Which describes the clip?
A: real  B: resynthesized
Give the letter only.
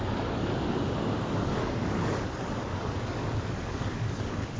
B